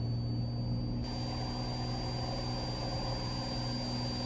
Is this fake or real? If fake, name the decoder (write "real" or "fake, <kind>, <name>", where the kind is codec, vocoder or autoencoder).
real